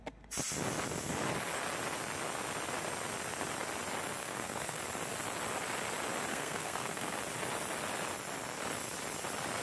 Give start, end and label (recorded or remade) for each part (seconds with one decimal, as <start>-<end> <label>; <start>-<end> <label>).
0.0-4.2 recorded; 4.2-4.8 remade; 4.8-6.3 recorded; 6.3-7.2 remade; 7.2-9.6 recorded